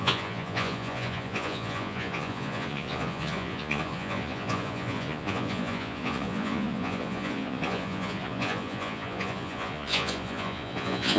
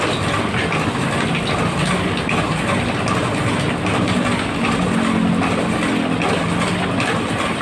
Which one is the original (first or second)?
second